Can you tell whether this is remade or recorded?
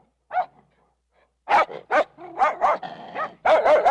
recorded